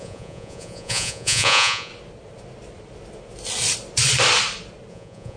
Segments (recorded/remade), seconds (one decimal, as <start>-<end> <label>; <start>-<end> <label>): 0.0-1.9 remade; 1.9-4.9 recorded; 4.9-5.4 remade